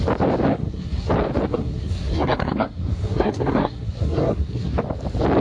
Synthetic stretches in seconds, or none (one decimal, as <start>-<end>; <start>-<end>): 0.5-1.1; 1.5-4.7